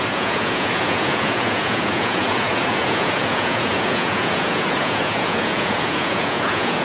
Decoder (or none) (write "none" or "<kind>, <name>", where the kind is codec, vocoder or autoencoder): vocoder, Vocos